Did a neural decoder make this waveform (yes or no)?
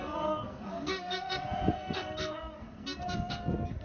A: yes